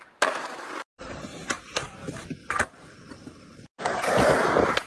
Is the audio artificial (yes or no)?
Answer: yes